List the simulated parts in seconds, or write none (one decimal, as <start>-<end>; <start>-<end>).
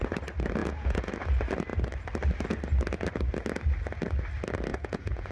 0.6-1.1; 4.7-5.3